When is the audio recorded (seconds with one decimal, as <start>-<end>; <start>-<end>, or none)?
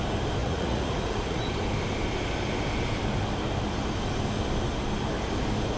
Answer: 0.0-0.4; 1.4-5.8